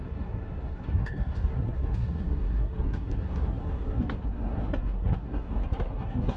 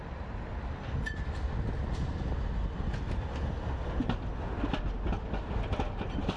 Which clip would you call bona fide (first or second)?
second